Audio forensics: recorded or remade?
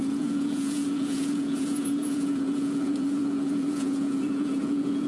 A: remade